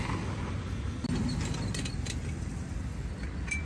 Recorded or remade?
recorded